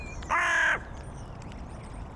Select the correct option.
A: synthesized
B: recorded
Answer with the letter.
B